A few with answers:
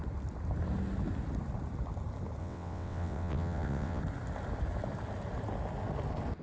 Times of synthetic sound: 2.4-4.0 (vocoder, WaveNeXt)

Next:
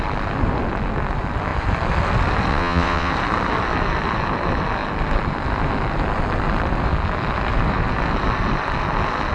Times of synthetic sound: 2.5-3.1 (vocoder, WaveNeXt)

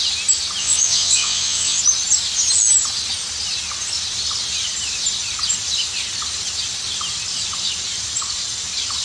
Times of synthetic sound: 0.6-1.8 (vocoder, WaveNeXt)

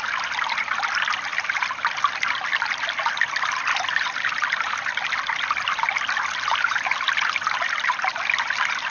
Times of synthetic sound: none

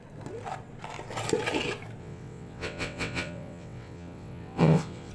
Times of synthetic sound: 2.0-5.1 (vocoder, WaveNeXt)

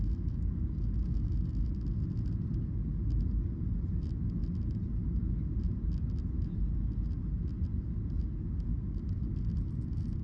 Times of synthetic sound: none